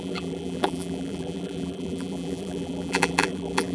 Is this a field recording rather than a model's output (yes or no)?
no